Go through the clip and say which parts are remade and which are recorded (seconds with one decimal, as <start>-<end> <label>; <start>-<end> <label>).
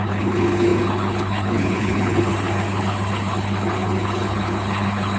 0.0-5.2 remade